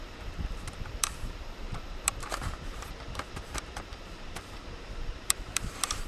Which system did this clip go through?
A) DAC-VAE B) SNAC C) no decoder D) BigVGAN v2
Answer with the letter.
D